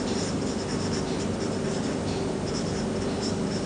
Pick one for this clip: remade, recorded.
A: recorded